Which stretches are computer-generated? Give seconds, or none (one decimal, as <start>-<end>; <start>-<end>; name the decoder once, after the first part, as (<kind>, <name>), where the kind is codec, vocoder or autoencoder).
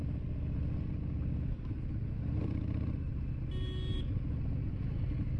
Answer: none